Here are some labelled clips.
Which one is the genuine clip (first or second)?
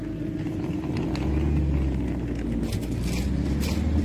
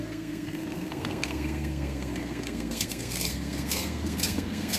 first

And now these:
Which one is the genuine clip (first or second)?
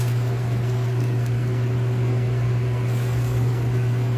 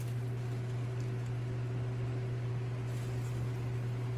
second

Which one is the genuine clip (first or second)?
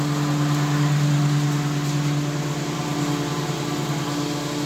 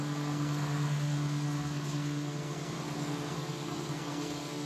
first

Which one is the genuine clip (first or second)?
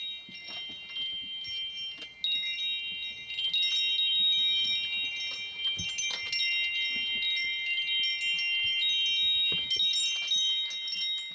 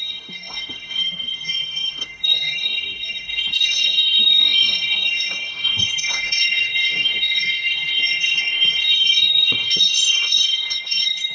first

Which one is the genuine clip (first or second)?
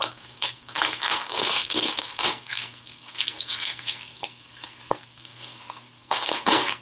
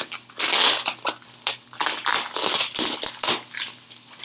second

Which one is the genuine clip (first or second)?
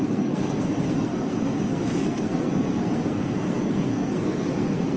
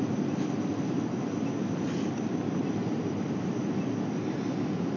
second